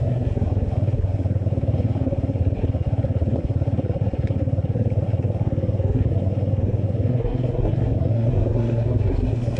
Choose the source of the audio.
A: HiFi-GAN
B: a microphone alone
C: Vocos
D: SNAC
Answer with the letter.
D